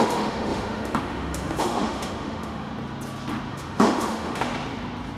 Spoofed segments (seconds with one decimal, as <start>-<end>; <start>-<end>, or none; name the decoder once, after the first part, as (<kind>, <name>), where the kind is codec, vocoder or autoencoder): 0.0-2.7 (autoencoder, DAC-VAE); 3.5-4.5